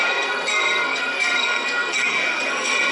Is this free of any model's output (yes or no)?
no